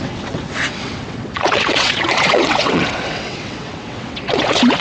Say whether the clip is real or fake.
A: fake